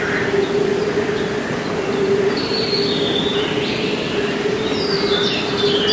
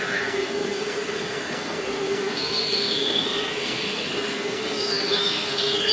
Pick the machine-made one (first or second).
second